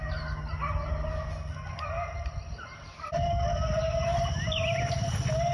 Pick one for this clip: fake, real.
real